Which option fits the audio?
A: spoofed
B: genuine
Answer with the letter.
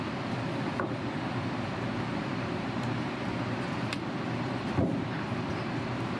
A